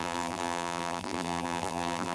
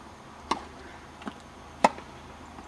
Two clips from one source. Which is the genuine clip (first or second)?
second